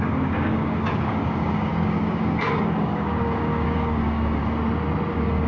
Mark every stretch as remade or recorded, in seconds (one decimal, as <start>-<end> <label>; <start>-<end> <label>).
0.0-4.4 remade; 4.4-5.1 recorded; 5.1-5.5 remade